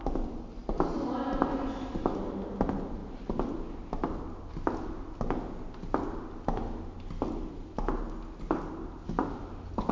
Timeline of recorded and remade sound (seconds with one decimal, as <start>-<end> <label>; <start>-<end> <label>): 0.0-9.9 recorded